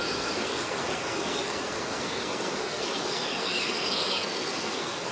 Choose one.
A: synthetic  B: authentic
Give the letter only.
A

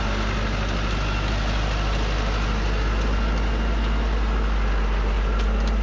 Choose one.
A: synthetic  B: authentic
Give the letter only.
B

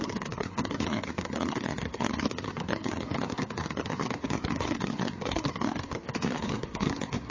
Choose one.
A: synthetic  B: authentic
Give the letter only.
A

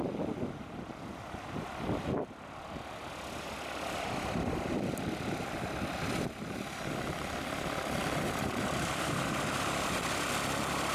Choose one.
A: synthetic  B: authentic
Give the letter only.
B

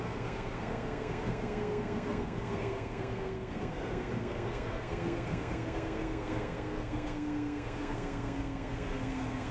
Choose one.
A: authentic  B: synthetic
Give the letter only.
B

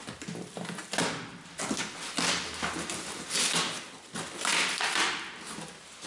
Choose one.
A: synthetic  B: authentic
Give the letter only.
B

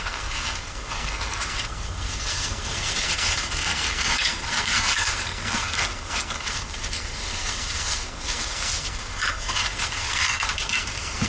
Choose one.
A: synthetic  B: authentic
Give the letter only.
A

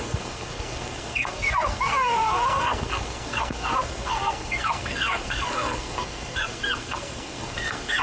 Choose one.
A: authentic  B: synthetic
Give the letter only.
B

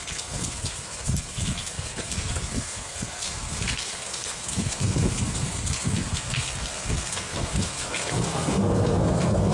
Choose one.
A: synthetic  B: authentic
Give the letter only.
A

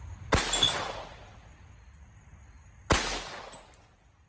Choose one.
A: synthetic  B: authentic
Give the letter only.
B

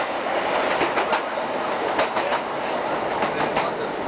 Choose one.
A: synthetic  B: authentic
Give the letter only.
B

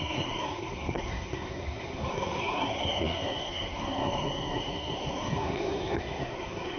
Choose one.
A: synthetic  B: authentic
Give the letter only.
A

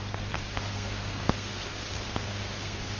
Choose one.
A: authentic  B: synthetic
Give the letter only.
B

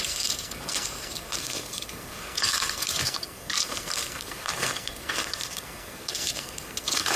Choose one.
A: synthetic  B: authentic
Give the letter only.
A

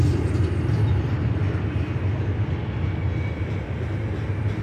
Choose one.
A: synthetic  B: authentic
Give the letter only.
B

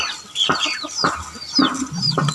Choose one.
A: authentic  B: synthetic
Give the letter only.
A